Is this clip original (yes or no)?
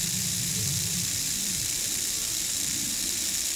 no